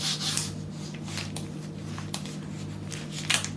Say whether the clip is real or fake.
real